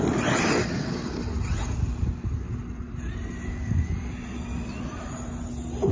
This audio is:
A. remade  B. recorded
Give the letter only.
B